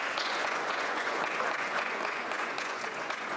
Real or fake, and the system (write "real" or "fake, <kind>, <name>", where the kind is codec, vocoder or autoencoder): fake, vocoder, Vocos